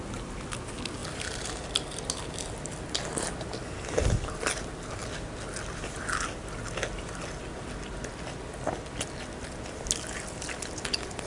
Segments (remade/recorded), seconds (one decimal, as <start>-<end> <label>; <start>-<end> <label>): 0.0-11.3 recorded